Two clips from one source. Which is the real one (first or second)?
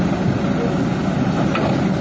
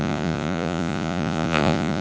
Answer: first